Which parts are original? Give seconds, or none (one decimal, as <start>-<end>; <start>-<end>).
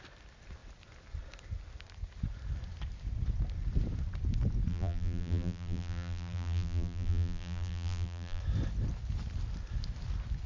0.0-4.7; 8.4-10.5